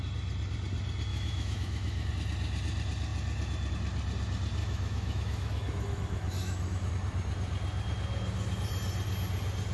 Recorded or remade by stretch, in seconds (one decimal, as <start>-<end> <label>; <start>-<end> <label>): 0.0-1.1 recorded; 1.1-2.1 remade; 2.1-4.6 recorded; 4.6-6.9 remade; 6.9-9.7 recorded